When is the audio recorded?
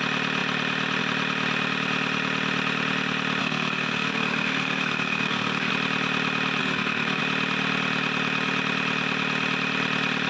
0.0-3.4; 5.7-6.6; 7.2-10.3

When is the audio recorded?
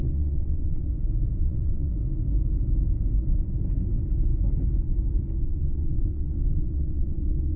0.9-1.4; 1.9-5.4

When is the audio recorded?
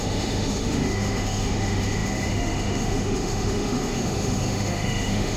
none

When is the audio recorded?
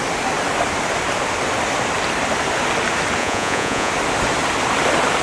0.0-3.2; 3.9-5.2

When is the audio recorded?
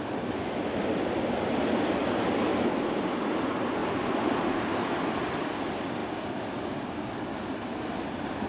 0.0-2.5; 3.1-3.8; 4.6-8.5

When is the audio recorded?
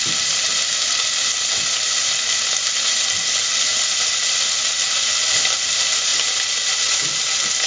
0.0-7.7